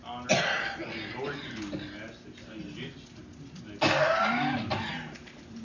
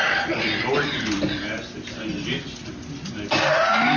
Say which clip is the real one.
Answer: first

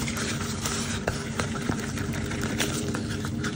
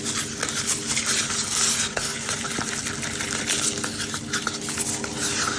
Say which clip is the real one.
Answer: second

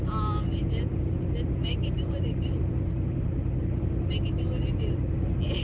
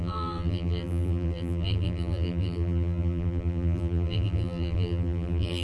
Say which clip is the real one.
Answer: first